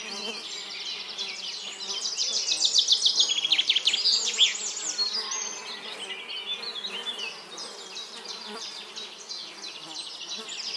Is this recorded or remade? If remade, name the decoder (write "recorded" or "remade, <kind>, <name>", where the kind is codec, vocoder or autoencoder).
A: recorded